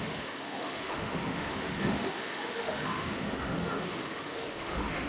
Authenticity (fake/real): fake